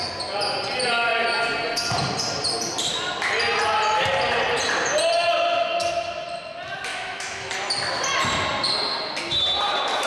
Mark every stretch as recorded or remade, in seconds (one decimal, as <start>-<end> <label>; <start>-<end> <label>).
0.0-6.9 recorded; 6.9-7.5 remade; 7.5-10.1 recorded